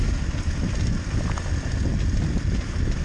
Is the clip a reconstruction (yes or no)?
no